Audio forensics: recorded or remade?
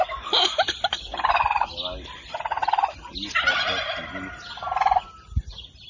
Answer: recorded